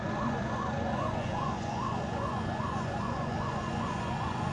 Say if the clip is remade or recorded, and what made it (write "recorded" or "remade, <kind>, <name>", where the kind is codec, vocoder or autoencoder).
remade, vocoder, Vocos